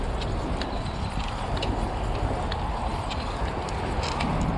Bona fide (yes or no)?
yes